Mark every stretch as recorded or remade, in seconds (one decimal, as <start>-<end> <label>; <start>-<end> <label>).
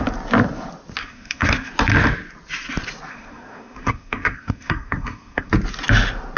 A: 0.0-1.0 recorded; 1.0-1.7 remade; 1.7-3.1 recorded; 3.1-5.5 remade; 5.5-6.4 recorded